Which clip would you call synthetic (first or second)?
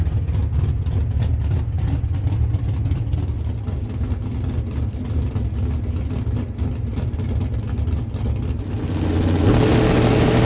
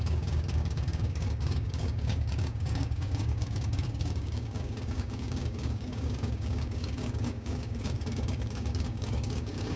second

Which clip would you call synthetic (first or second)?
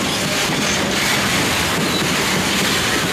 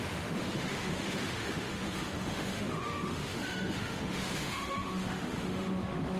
second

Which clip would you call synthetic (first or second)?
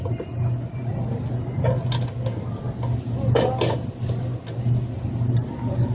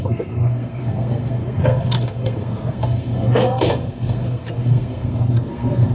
second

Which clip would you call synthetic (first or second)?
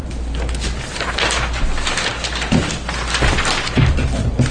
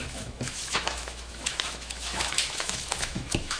second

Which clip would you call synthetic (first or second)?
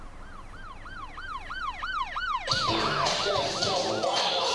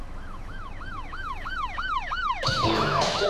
second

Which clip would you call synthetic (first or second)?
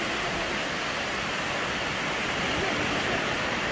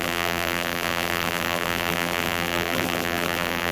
second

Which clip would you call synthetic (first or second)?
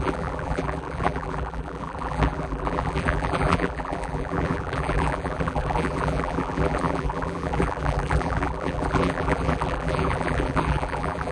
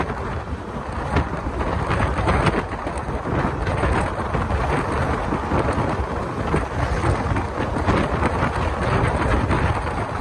first